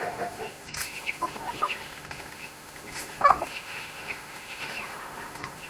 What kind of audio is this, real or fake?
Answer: fake